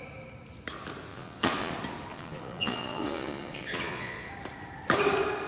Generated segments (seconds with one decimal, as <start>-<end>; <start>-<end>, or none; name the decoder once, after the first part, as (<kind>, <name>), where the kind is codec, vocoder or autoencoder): 1.1-1.7 (vocoder, Vocos); 2.1-4.3